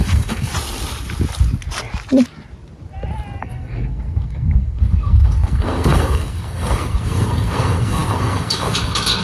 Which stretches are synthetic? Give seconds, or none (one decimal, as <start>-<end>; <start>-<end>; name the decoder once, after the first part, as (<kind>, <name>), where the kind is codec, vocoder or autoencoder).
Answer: 0.0-0.5 (codec, SNAC); 3.4-9.2